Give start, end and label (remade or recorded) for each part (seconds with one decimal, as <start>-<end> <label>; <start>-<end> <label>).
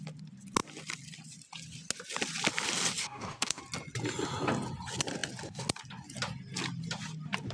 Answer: 0.0-3.0 recorded; 3.0-3.6 remade; 3.6-7.5 recorded